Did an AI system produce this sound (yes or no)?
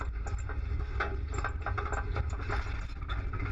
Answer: no